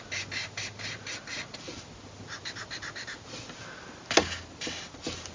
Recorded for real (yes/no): yes